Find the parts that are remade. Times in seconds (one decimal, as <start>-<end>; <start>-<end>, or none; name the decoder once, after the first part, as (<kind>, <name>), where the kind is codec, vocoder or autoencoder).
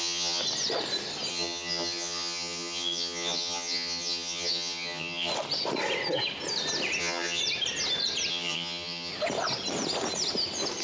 0.0-0.4 (vocoder, HiFi-GAN); 1.3-5.3; 7.0-7.4; 8.3-9.1